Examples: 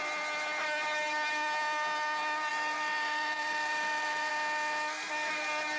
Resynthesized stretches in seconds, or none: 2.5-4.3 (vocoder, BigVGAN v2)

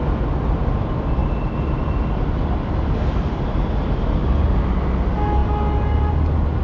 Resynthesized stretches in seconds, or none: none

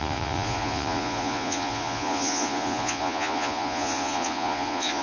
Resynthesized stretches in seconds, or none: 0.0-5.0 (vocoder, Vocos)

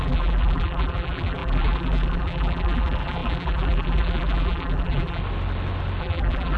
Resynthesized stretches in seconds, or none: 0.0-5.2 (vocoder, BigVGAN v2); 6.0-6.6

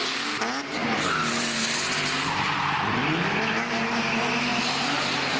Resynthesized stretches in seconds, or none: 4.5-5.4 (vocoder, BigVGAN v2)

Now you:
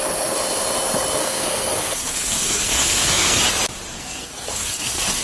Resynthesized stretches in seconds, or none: 1.2-3.4 (codec, SNAC); 3.9-5.2

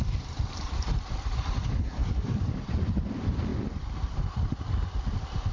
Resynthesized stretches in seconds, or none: 1.8-2.4 (codec, SNAC)

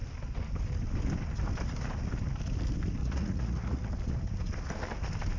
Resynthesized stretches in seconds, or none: 3.0-3.9 (vocoder, Vocos)